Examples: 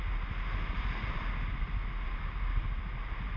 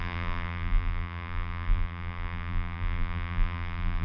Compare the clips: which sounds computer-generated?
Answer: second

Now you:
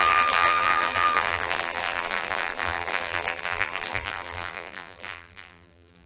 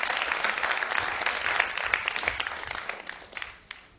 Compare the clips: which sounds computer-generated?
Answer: first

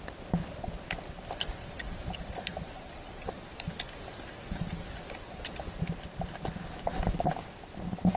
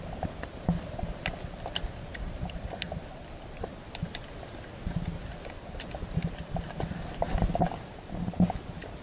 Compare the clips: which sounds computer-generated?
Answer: first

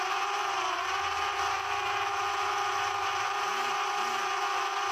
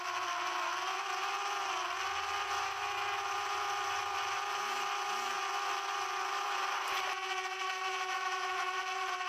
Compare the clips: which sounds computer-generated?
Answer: first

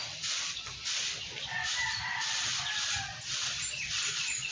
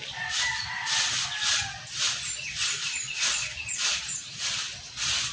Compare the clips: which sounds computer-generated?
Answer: first